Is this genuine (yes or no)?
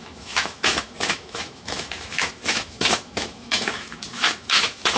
no